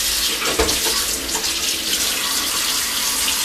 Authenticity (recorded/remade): recorded